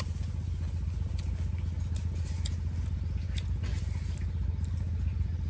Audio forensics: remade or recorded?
recorded